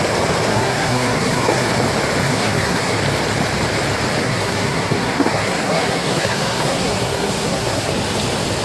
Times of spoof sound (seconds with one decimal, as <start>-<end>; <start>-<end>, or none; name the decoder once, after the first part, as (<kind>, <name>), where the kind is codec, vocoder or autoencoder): 0.5-1.7 (codec, SNAC); 2.2-3.0; 4.2-7.9

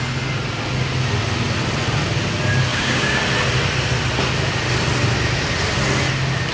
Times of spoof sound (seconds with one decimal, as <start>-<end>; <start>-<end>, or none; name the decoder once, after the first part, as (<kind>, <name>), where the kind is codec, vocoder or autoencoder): 2.7-3.2 (codec, DAC)

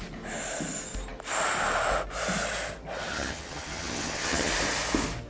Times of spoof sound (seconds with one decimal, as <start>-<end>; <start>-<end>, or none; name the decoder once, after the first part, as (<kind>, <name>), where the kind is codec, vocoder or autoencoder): 3.1-4.5 (vocoder, HiFi-GAN)

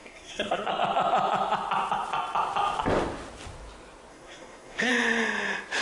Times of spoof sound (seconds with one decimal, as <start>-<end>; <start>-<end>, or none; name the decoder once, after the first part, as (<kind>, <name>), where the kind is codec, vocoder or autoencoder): 0.0-0.7 (codec, SNAC); 4.1-4.9

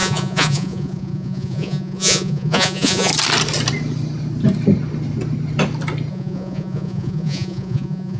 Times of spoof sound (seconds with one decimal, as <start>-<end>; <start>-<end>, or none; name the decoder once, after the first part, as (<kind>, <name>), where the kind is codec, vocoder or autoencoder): 0.0-3.1 (vocoder, Vocos); 6.1-8.2

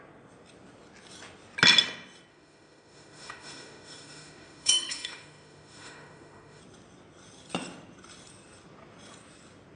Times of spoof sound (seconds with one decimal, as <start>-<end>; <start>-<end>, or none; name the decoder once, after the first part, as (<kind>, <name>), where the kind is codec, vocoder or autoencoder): 2.3-6.6 (autoencoder, DAC-VAE)